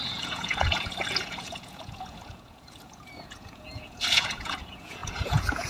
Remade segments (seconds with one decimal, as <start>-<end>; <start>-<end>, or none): 0.0-5.7

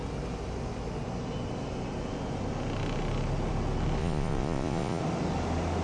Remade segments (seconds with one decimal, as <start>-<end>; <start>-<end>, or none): 4.0-5.0

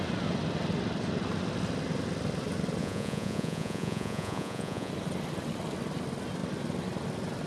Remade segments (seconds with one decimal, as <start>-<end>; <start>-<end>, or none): 2.8-4.9

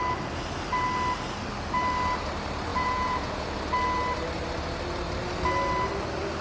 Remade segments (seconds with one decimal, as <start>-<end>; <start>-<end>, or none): 2.7-3.6